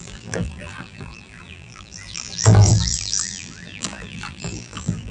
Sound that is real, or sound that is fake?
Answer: fake